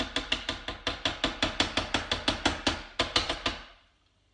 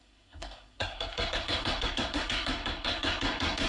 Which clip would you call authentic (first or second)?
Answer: first